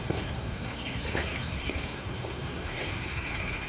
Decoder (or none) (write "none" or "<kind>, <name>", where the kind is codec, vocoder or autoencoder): codec, SNAC